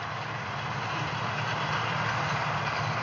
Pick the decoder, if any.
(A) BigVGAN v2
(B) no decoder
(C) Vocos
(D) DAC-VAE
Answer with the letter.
B